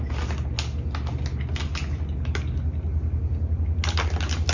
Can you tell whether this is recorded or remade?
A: recorded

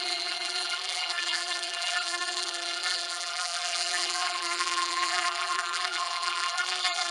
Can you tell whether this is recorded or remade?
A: remade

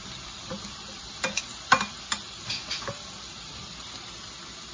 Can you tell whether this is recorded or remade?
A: recorded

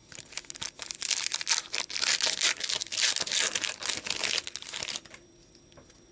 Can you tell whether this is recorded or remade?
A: recorded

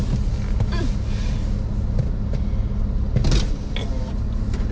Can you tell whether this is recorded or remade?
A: recorded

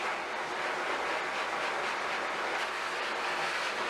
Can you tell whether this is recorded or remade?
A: recorded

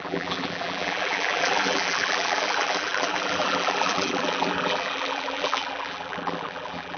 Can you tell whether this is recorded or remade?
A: remade